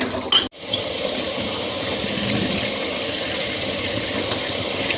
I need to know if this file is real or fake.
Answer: real